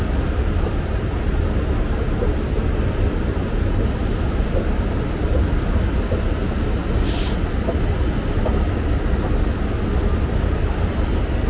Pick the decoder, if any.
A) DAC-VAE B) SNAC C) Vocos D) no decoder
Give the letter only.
D